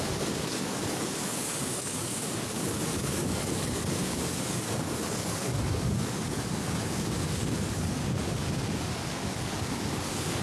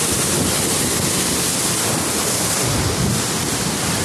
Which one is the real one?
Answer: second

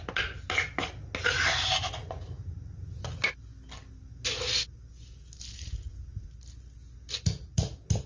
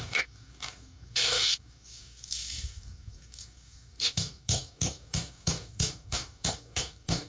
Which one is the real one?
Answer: first